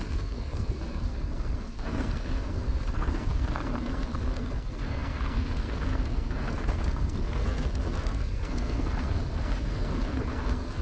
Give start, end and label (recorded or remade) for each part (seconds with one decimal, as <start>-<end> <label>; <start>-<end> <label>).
0.0-10.8 remade

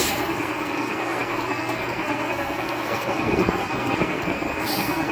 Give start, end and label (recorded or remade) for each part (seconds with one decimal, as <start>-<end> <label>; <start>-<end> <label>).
0.0-5.1 remade

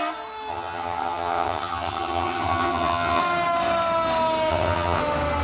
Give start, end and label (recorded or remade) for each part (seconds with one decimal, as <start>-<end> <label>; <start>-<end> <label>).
0.0-0.5 recorded; 0.5-3.2 remade; 3.2-4.5 recorded; 4.5-5.0 remade; 5.0-5.4 recorded

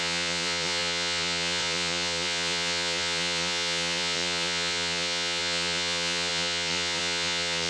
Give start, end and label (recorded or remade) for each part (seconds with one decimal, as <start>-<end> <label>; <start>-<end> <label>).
0.0-7.7 remade

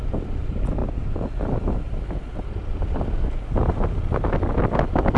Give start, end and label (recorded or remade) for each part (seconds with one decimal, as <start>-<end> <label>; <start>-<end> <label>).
0.0-5.2 recorded

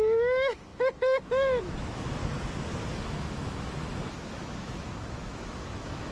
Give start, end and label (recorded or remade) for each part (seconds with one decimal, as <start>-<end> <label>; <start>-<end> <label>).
0.0-2.2 remade; 2.2-3.0 recorded; 3.0-6.1 remade

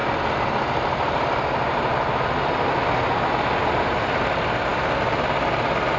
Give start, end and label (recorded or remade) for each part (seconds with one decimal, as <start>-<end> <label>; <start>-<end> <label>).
0.0-6.0 recorded

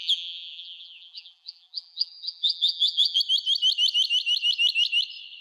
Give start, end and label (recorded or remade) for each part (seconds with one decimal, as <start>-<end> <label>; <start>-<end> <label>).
0.0-3.2 remade; 3.2-5.4 recorded